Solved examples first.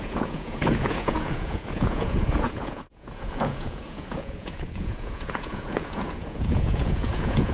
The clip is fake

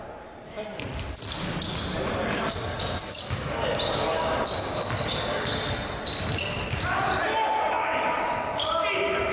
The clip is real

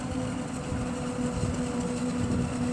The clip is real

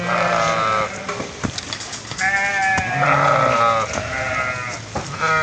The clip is real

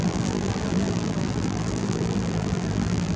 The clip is fake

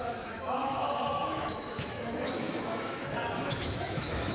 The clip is fake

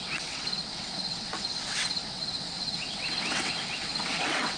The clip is fake